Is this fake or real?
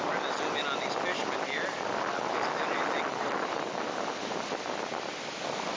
real